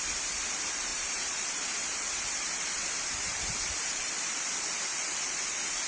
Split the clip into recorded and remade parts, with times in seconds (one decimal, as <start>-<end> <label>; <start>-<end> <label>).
0.0-0.9 recorded; 0.9-4.4 remade; 4.4-4.9 recorded; 4.9-5.9 remade